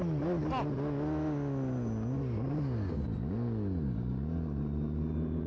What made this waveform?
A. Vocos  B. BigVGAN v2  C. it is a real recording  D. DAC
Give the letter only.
C